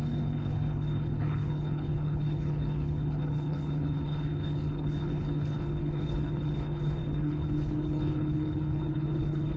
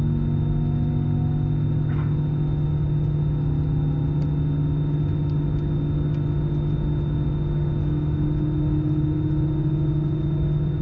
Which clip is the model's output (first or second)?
first